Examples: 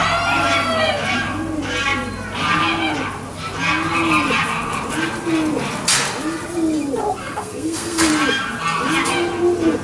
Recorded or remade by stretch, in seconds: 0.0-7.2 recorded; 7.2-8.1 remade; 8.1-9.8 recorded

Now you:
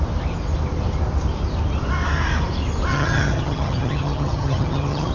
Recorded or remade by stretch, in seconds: 0.0-2.9 recorded; 2.9-5.1 remade

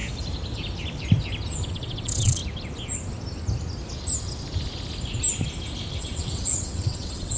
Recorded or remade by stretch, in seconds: 0.0-1.7 recorded; 1.7-2.4 remade; 2.4-6.0 recorded; 6.0-7.4 remade

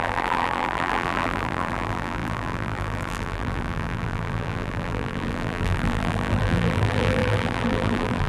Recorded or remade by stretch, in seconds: 0.0-8.3 remade

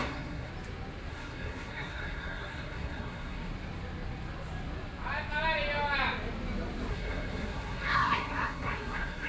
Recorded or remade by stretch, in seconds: 0.0-0.5 remade; 0.5-1.1 recorded; 1.1-3.5 remade; 3.5-6.9 recorded; 6.9-9.3 remade

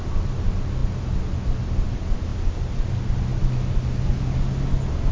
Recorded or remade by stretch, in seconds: 0.0-3.3 recorded; 3.3-4.4 remade; 4.4-5.1 recorded